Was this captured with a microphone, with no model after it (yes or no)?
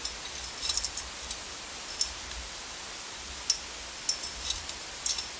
yes